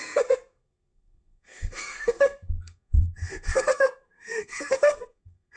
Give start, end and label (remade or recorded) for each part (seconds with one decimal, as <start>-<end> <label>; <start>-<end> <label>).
0.0-5.6 remade